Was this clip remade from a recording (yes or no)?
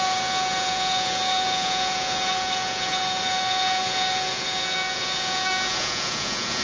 yes